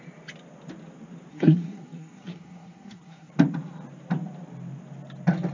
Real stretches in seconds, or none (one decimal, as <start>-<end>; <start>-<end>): 0.0-1.3; 3.3-5.5